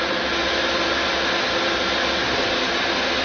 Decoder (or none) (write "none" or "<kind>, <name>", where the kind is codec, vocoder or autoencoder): none